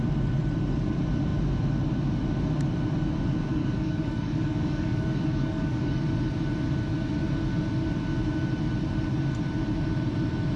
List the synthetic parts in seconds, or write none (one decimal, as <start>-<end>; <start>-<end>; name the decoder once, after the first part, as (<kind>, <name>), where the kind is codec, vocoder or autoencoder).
3.5-6.0 (codec, DAC)